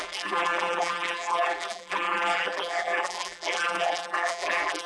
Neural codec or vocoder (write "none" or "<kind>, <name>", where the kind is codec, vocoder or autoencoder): vocoder, BigVGAN v2